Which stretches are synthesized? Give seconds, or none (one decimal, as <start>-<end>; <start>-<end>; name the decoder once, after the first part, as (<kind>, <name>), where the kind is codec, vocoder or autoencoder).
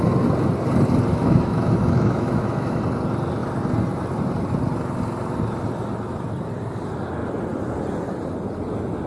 1.1-2.8 (autoencoder, DAC-VAE)